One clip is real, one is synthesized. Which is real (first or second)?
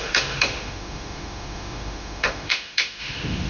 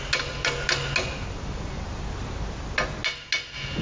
second